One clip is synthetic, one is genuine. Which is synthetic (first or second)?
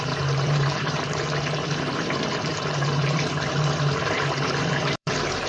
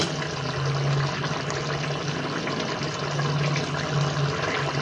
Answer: first